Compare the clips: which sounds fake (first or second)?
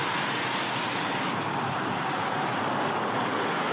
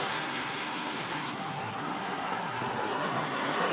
second